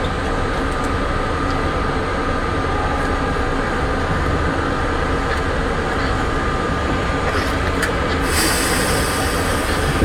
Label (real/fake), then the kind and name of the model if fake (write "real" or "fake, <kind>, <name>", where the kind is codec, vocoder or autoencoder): real